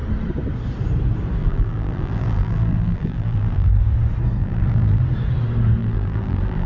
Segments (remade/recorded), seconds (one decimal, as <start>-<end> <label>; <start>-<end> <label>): 0.0-1.4 recorded; 1.4-3.8 remade; 3.8-4.4 recorded; 4.4-5.0 remade; 5.0-5.8 recorded; 5.8-6.7 remade